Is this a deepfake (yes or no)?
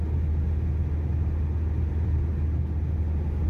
no